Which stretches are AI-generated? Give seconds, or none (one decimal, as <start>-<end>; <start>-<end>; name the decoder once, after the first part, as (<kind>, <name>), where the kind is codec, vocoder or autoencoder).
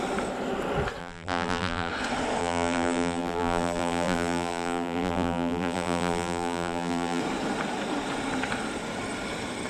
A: 1.0-1.9 (vocoder, BigVGAN v2); 2.4-7.2